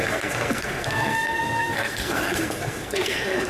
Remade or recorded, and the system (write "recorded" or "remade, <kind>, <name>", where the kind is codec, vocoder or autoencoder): remade, codec, SNAC